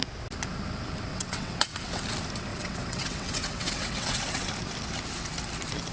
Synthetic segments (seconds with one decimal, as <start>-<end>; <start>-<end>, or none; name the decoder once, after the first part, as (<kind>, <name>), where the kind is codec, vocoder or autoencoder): 1.1-2.0 (vocoder, WaveNeXt); 2.5-4.5